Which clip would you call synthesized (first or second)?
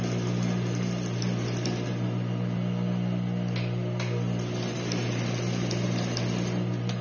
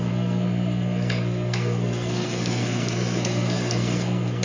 second